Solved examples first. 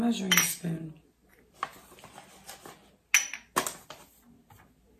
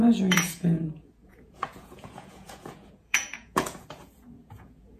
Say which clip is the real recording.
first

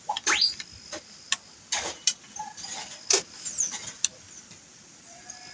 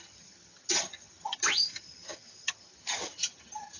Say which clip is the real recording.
first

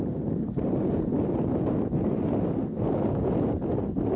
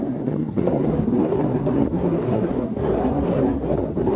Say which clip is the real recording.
first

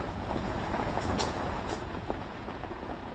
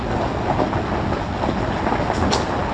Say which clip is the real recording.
second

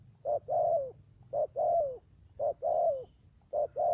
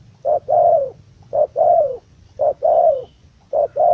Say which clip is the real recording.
first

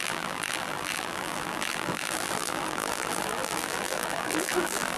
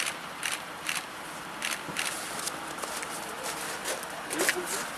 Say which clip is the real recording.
second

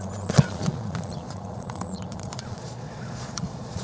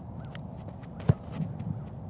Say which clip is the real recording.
second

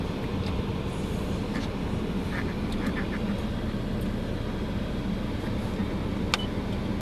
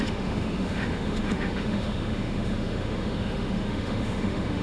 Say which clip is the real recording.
first